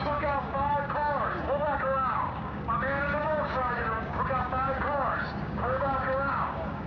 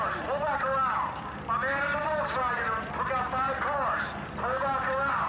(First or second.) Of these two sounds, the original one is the second